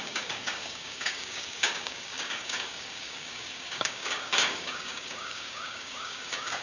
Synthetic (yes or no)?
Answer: yes